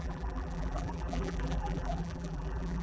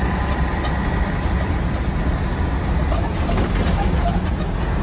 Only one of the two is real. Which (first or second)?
second